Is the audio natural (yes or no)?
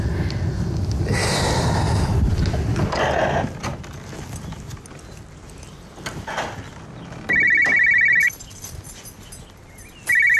yes